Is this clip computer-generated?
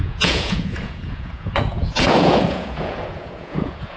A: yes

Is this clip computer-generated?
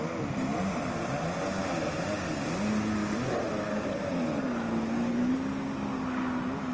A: no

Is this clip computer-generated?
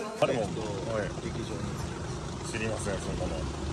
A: no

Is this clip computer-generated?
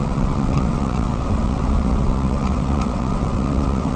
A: yes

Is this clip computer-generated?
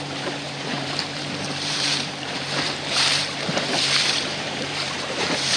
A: yes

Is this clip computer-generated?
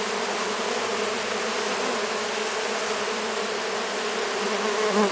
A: no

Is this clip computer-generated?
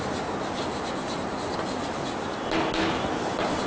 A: no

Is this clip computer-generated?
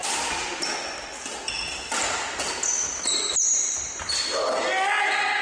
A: no